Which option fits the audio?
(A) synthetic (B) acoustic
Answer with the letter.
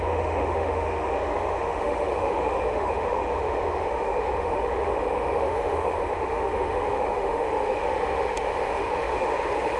A